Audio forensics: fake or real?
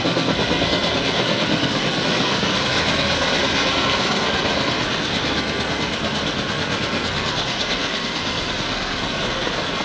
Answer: fake